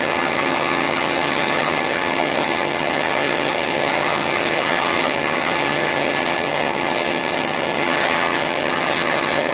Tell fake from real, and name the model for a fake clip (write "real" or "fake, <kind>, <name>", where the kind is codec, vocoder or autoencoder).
fake, vocoder, HiFi-GAN